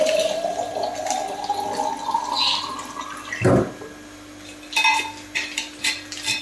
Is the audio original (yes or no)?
yes